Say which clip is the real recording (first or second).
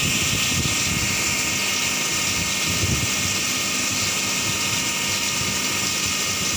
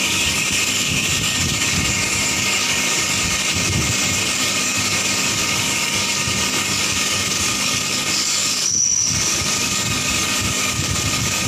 first